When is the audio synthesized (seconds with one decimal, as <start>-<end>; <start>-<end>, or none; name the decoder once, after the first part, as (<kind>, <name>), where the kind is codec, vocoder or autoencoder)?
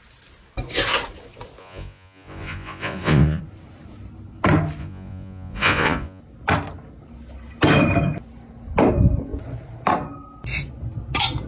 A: 1.6-3.4 (vocoder, Vocos); 4.8-6.2